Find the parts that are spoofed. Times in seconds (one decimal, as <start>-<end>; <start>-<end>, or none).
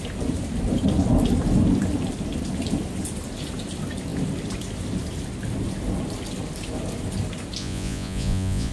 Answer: 7.6-8.7